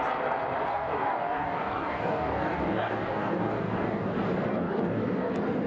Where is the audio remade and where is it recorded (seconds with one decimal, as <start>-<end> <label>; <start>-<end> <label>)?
0.0-0.7 recorded; 0.7-4.1 remade; 4.1-4.5 recorded; 4.5-5.3 remade; 5.3-5.7 recorded